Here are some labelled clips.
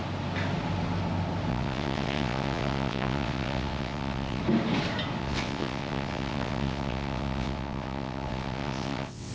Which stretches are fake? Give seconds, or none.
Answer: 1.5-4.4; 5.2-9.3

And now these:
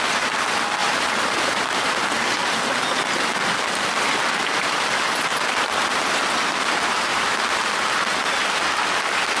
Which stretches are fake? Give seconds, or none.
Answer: 0.8-2.0; 5.3-6.2; 7.1-8.2

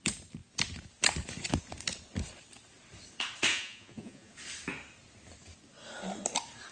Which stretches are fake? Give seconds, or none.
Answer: 3.5-4.3

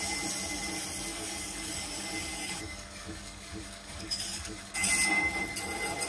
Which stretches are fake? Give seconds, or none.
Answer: 1.1-1.7; 2.3-4.9

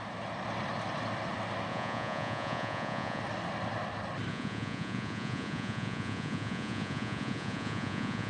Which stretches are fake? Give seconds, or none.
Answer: 1.7-3.2; 4.3-8.3

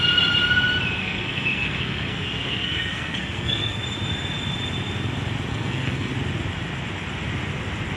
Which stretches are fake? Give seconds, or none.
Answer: 1.0-3.8; 5.5-6.1

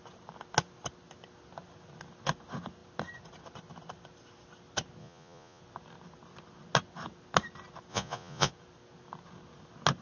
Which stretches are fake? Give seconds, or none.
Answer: 5.0-5.6; 7.9-8.5

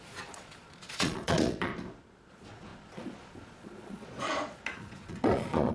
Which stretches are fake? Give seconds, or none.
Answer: 0.0-1.7; 2.3-5.7